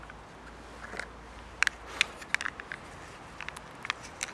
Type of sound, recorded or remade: recorded